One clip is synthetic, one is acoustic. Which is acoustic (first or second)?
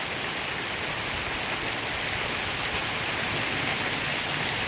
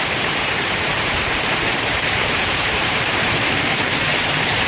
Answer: first